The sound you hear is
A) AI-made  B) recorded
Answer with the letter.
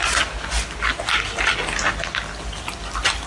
B